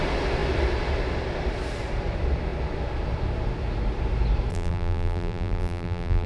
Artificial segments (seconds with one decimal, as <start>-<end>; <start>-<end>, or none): 4.5-6.3